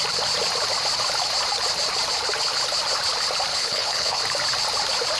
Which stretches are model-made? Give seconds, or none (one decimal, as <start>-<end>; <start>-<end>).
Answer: 3.5-4.2